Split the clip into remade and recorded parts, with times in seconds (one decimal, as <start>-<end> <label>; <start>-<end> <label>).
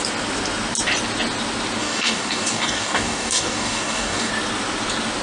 0.0-1.8 recorded; 1.8-4.3 remade; 4.3-5.2 recorded